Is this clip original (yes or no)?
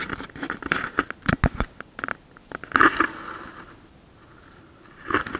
yes